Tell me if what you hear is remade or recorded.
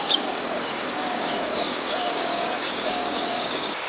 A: remade